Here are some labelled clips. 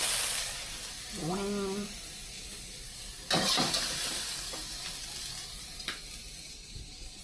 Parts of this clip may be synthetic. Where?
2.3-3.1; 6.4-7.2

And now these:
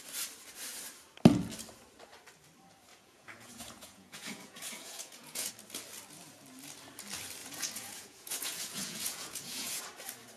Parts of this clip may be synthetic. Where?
2.9-5.5; 7.4-9.8

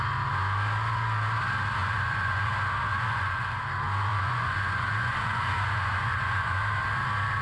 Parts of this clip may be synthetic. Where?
1.8-2.5; 2.9-3.6; 4.1-6.6

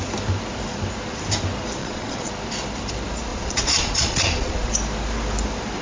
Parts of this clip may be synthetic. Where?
1.8-2.3; 3.3-4.7